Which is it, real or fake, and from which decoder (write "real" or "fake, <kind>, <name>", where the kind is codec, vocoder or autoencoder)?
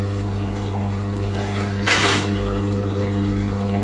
fake, codec, SNAC